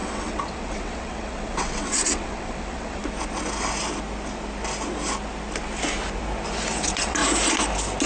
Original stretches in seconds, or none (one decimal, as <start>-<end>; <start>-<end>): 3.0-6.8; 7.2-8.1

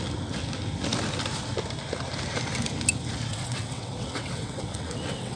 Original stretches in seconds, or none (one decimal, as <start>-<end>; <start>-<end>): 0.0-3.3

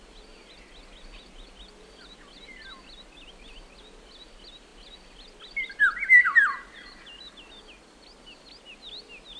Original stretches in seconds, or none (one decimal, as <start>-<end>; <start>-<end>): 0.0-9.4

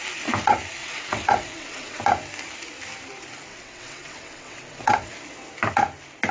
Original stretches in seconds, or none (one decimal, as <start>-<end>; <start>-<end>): 0.0-0.8; 2.0-3.5; 5.1-6.3